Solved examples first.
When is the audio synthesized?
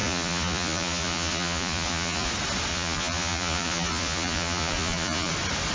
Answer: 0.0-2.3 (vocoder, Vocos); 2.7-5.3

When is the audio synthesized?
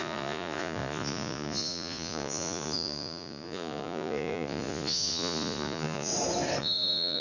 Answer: 0.0-6.1 (vocoder, Vocos); 6.6-7.2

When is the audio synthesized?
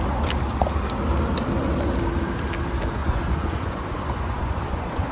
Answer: 3.0-5.1 (vocoder, Vocos)